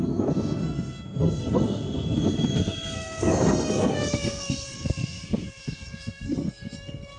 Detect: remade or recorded remade